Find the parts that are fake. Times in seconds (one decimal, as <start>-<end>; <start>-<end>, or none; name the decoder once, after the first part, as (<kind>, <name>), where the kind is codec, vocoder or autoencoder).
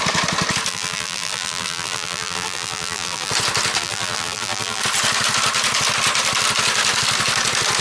0.7-3.3 (vocoder, BigVGAN v2); 3.8-4.8